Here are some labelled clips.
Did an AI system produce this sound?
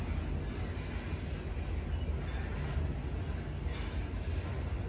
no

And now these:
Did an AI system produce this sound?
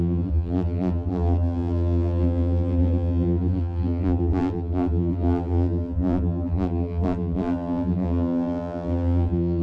yes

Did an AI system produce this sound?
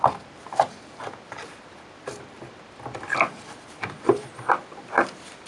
yes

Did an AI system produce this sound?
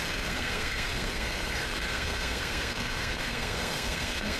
yes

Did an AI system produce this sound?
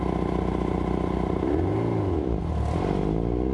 no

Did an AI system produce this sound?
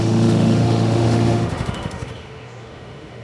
yes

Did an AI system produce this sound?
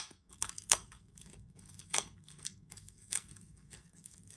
yes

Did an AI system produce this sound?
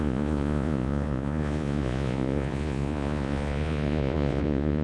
yes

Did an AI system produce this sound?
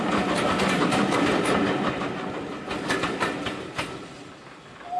no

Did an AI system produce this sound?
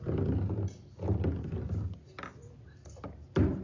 no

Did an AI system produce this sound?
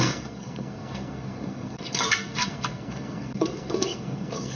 yes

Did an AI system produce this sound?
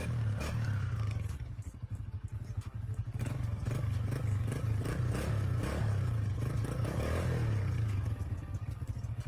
yes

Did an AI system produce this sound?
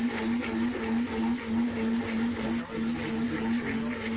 no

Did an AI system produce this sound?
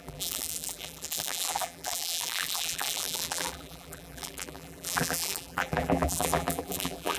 yes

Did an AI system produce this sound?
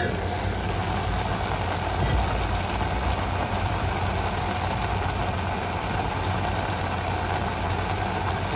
no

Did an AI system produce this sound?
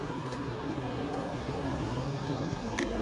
yes